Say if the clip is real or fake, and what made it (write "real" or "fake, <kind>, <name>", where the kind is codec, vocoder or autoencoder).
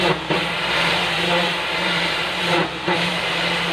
fake, vocoder, BigVGAN v2